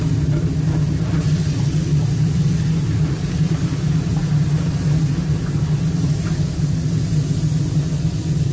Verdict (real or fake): real